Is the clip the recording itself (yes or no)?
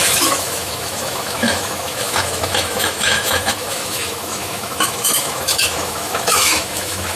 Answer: no